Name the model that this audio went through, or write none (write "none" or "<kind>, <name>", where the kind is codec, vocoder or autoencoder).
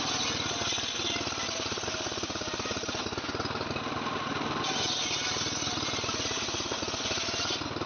none